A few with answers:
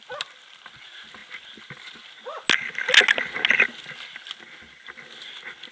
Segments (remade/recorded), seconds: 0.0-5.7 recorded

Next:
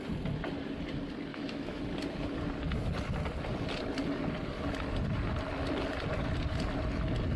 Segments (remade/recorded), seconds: 0.0-1.3 recorded; 1.3-1.8 remade; 1.8-7.4 recorded

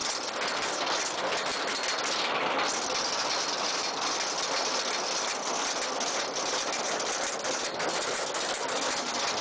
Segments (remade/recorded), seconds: 0.0-9.4 recorded

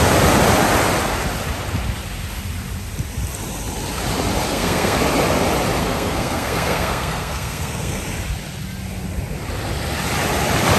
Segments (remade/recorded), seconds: 0.0-4.5 recorded; 4.5-5.0 remade; 5.0-5.8 recorded; 5.8-8.0 remade; 8.0-10.8 recorded

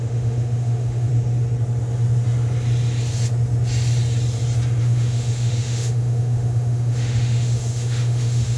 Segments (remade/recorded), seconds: 0.0-1.1 remade; 1.1-4.8 recorded; 4.8-8.6 remade

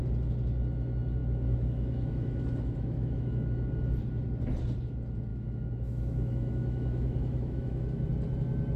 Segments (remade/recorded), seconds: 0.0-1.2 recorded; 1.2-3.7 remade; 3.7-5.3 recorded; 5.3-7.8 remade; 7.8-8.8 recorded

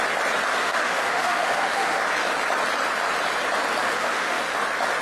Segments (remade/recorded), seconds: 0.0-0.6 recorded; 0.6-2.0 remade; 2.0-3.8 recorded; 3.8-4.4 remade; 4.4-5.0 recorded